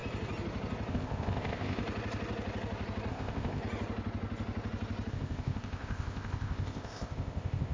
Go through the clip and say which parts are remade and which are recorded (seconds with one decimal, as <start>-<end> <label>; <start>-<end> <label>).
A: 0.0-0.9 recorded; 0.9-1.8 remade; 1.8-3.1 recorded; 3.1-3.6 remade; 3.6-5.1 recorded; 5.1-7.7 remade